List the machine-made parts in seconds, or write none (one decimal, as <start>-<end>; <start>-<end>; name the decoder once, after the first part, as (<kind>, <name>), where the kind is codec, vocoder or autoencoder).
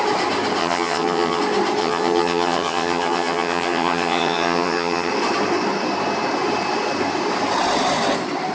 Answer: 0.6-1.4 (vocoder, HiFi-GAN); 1.8-5.1